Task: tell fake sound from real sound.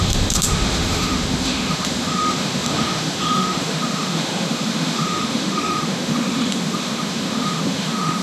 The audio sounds fake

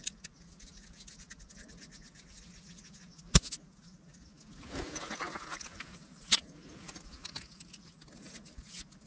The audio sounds real